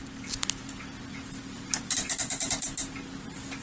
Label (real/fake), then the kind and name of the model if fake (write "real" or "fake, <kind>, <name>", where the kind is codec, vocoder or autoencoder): real